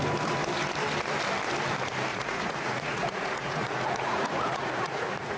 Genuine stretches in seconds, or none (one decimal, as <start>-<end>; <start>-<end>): 0.0-2.1